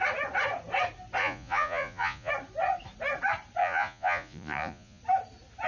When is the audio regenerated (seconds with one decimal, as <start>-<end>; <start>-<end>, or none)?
1.2-2.3; 3.6-5.0